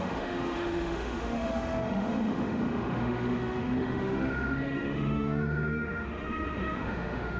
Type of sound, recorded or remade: remade